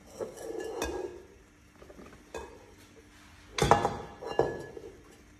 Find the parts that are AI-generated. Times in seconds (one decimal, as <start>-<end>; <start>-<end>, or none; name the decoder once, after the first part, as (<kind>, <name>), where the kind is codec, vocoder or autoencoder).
none